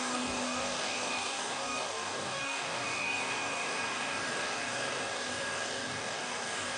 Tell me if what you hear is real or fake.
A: fake